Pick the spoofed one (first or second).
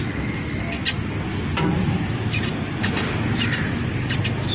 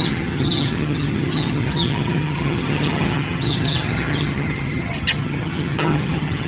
second